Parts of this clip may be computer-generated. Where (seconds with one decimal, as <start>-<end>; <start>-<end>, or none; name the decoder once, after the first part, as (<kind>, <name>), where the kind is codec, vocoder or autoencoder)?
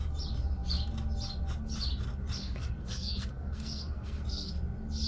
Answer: 2.4-4.5 (codec, SNAC)